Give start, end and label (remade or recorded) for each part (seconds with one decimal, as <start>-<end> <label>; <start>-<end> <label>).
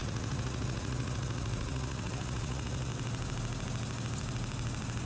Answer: 0.0-2.9 remade; 2.9-5.1 recorded